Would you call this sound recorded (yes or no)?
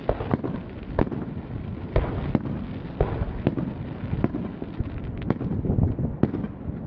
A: yes